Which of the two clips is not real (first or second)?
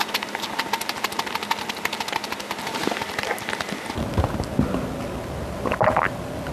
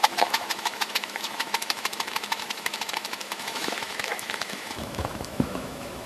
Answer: second